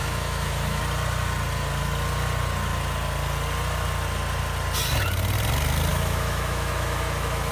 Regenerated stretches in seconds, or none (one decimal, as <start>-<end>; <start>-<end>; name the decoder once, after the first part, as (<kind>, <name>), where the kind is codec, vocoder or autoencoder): 0.0-0.8 (autoencoder, DAC-VAE); 5.9-7.5